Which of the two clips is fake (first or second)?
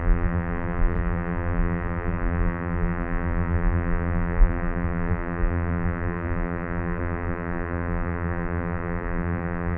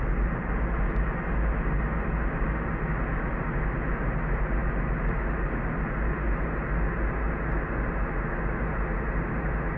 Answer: first